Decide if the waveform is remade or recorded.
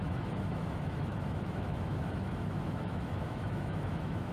remade